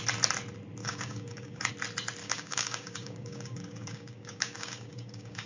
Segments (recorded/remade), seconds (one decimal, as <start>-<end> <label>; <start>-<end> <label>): 0.0-0.8 recorded; 0.8-1.7 remade; 1.7-2.2 recorded; 2.2-5.5 remade